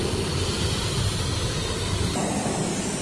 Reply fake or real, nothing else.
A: real